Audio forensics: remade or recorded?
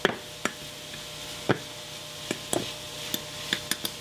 recorded